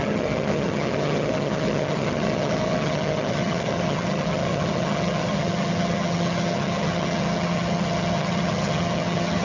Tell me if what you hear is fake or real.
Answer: fake